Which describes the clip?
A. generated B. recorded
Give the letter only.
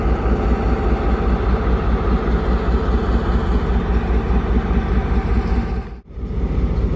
B